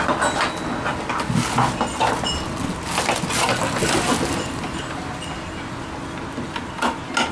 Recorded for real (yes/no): yes